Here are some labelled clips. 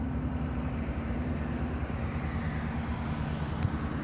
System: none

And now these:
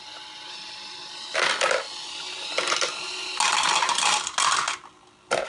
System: none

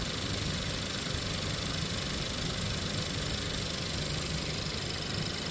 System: none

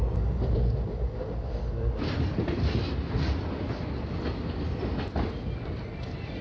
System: none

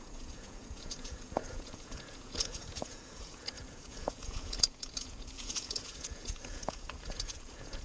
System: vocoder, Vocos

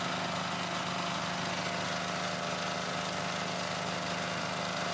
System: none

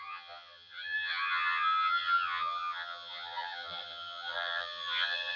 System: vocoder, HiFi-GAN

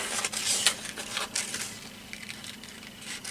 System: none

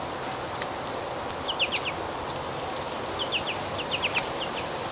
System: none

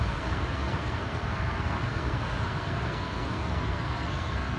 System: codec, SNAC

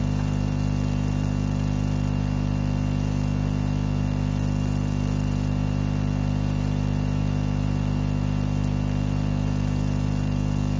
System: vocoder, BigVGAN v2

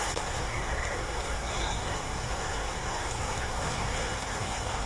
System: codec, SNAC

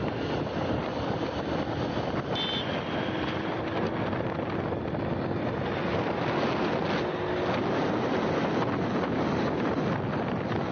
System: none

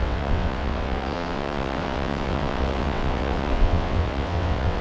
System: vocoder, WaveNeXt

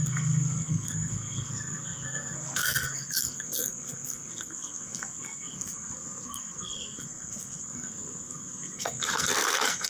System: codec, SNAC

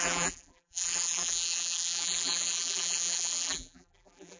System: vocoder, BigVGAN v2